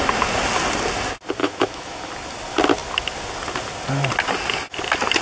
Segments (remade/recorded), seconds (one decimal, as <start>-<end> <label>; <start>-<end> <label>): 0.0-1.4 recorded; 1.4-2.1 remade; 2.1-5.2 recorded